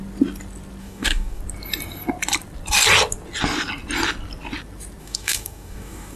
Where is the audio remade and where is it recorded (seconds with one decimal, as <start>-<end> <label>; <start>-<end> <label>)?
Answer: 0.0-0.8 recorded; 0.8-1.4 remade; 1.4-5.0 recorded; 5.0-6.2 remade